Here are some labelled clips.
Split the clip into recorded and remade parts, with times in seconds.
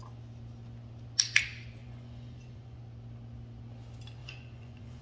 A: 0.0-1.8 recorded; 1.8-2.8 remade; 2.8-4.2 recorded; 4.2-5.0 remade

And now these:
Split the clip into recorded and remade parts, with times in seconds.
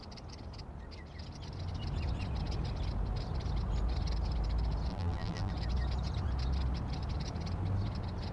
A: 0.0-4.9 recorded; 4.9-5.5 remade; 5.5-8.3 recorded